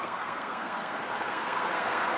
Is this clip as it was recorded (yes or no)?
no